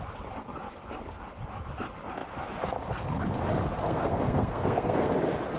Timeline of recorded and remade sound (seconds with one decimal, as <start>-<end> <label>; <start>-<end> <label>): 0.0-3.8 recorded; 3.8-5.1 remade; 5.1-5.6 recorded